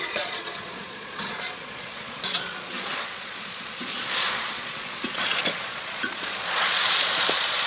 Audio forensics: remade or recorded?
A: remade